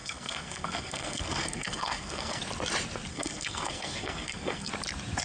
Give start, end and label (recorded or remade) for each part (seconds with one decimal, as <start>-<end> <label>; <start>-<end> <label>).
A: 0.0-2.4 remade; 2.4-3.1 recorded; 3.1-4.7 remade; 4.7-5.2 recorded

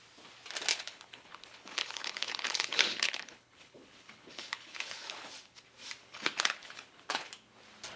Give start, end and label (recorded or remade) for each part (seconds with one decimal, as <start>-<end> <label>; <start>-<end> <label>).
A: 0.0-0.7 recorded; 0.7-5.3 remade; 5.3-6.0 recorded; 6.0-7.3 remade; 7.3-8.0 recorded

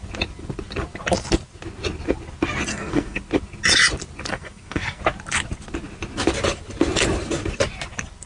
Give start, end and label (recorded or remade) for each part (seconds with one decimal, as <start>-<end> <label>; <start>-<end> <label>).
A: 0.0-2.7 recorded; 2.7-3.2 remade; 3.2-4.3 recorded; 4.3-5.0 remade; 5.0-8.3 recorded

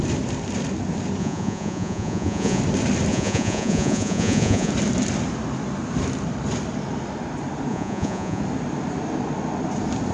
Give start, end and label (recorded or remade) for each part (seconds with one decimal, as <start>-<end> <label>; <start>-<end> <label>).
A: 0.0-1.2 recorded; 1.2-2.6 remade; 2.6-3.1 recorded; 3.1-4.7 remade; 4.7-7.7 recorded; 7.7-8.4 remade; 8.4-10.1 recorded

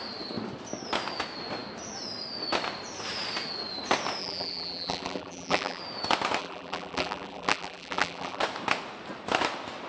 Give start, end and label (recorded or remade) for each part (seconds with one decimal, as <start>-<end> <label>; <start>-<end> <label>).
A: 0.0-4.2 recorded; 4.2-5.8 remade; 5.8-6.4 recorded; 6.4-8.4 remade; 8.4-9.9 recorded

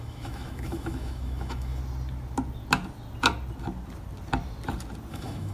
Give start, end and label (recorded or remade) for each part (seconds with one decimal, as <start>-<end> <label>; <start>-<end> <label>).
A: 0.0-1.8 remade; 1.8-5.1 recorded; 5.1-5.5 remade